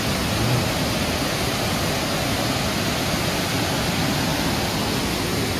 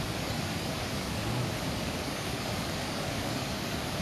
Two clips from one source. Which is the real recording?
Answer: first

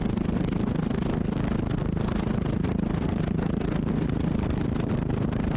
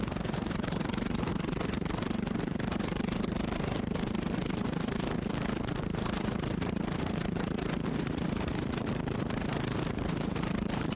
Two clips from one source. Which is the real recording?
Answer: first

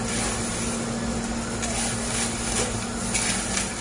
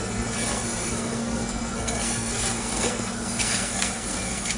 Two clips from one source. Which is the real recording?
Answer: first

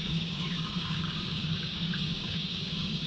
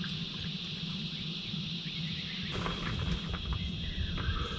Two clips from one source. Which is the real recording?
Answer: second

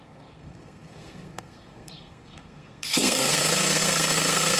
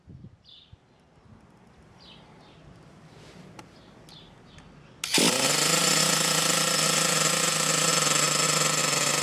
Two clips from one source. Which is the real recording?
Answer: second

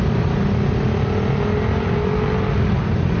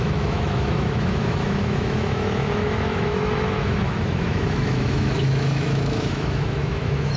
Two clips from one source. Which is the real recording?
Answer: first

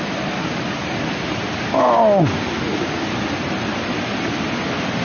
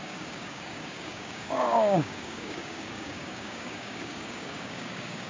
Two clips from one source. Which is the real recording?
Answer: first